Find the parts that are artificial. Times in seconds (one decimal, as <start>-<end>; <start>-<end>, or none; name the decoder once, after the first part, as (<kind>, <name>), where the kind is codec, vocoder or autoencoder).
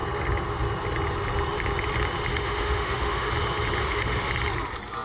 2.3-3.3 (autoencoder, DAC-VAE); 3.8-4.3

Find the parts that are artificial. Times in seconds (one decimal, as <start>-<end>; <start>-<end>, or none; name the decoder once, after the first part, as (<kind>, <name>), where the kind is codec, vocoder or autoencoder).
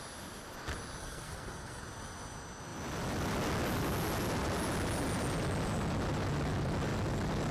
1.0-1.8 (codec, SNAC)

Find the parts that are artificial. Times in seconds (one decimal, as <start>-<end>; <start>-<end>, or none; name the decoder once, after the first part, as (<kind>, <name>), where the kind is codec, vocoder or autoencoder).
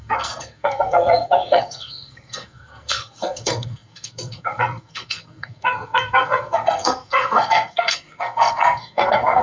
0.0-9.4 (codec, SNAC)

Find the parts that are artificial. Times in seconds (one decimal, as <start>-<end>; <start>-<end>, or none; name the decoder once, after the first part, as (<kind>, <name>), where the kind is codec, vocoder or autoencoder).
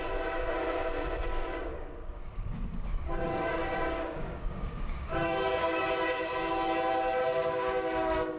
1.3-5.9 (codec, DAC); 7.2-8.4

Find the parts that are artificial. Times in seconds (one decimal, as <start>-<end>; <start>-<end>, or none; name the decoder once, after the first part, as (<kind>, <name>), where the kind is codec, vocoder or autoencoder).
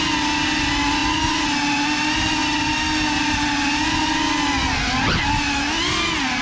none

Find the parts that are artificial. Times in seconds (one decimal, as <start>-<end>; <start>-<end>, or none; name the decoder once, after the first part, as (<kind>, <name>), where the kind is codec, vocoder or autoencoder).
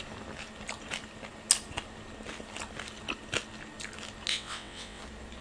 4.3-5.0 (vocoder, WaveNeXt)